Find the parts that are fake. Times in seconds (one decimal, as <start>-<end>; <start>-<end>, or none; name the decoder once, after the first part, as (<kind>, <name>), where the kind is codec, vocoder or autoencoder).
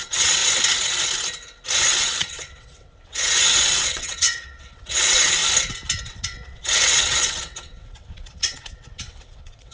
0.0-0.4 (vocoder, WaveNeXt); 1.8-5.4; 6.0-9.7